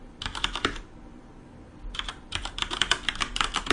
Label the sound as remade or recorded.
remade